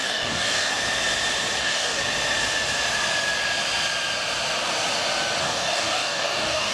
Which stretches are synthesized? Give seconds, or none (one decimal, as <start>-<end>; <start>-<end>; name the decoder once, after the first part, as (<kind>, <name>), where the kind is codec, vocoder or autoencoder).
0.0-0.7 (codec, DAC); 1.6-2.0; 5.4-6.7